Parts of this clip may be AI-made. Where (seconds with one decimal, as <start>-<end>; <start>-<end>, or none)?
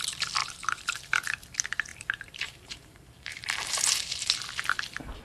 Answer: 0.4-1.0; 1.9-4.4